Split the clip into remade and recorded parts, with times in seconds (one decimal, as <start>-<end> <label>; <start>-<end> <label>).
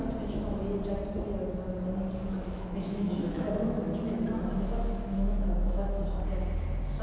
0.0-2.2 recorded; 2.2-6.2 remade; 6.2-7.0 recorded